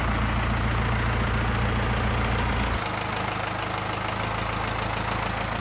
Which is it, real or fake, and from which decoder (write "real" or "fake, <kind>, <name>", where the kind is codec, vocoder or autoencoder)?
real